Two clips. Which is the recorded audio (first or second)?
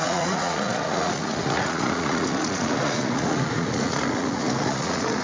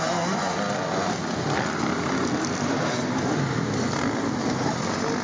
second